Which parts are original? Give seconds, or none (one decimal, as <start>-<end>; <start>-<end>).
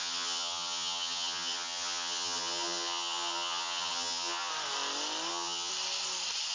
4.5-5.3; 5.7-6.5